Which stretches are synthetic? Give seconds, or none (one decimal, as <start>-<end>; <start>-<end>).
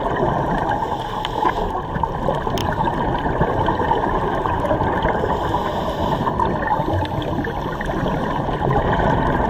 2.6-4.7